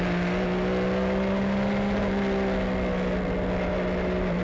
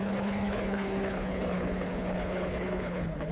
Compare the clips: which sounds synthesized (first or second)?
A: second